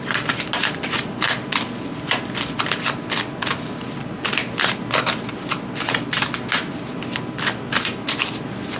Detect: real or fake real